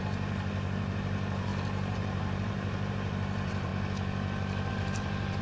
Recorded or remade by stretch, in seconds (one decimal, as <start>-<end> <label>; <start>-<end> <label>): 0.0-3.7 remade; 3.7-4.7 recorded; 4.7-5.4 remade